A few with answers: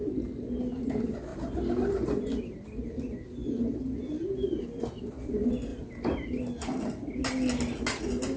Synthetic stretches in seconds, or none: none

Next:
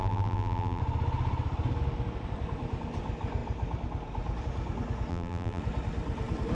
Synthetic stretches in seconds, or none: 0.0-0.8; 5.1-5.6

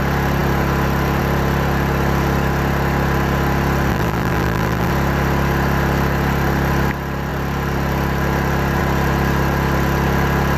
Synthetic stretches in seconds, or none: 3.9-4.9